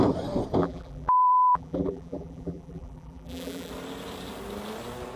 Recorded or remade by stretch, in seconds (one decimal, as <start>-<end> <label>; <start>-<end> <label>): 0.0-0.6 recorded; 0.6-3.7 remade; 3.7-5.2 recorded